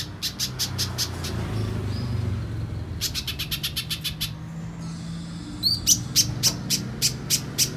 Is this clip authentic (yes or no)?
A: yes